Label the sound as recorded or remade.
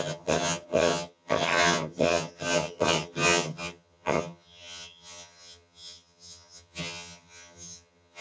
remade